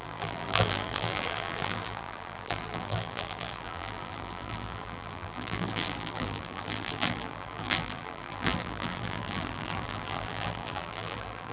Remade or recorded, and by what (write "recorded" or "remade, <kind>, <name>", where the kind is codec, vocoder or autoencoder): remade, vocoder, BigVGAN v2